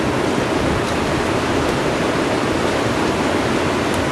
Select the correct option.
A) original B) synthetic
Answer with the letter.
A